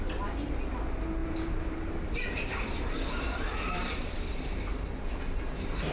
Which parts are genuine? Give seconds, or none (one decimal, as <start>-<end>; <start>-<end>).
0.0-1.2; 4.7-5.9